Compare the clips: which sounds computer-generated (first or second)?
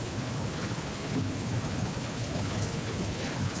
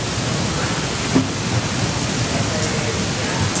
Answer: first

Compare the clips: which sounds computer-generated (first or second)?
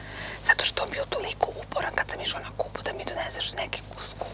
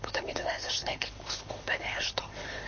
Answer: second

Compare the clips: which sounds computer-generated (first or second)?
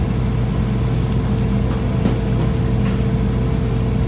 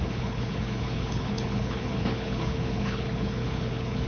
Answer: second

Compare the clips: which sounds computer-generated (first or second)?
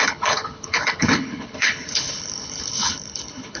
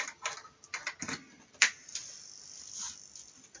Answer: first